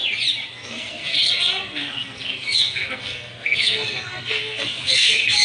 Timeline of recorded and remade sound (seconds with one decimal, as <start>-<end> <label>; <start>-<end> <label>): 0.0-0.5 recorded; 0.5-5.4 remade